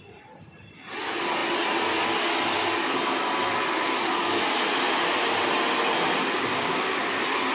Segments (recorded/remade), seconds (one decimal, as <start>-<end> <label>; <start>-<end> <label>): 0.0-6.5 recorded; 6.5-7.0 remade; 7.0-7.5 recorded